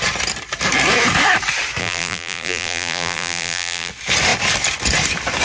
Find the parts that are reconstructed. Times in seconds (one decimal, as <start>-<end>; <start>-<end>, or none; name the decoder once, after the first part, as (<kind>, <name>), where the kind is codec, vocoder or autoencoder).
1.8-3.9 (vocoder, BigVGAN v2)